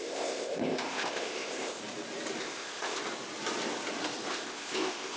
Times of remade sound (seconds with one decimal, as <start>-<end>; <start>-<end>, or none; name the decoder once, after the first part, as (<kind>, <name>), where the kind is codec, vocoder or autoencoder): 0.0-1.8 (codec, ZipCodec); 2.4-3.0; 4.3-5.2